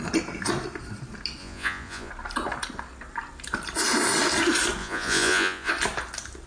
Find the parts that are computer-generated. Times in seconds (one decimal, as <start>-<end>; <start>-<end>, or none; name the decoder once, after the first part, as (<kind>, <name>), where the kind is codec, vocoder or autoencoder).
1.4-2.1 (vocoder, Vocos); 4.8-5.7